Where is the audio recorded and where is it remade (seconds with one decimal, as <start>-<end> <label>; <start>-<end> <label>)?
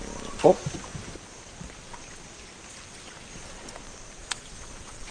0.0-4.2 recorded; 4.2-5.1 remade